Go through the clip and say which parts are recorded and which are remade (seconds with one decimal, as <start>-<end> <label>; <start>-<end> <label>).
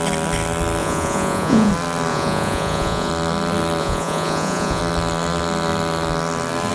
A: 0.0-0.8 recorded; 0.8-1.7 remade; 1.7-2.1 recorded; 2.1-3.1 remade; 3.1-3.8 recorded; 3.8-4.8 remade; 4.8-6.7 recorded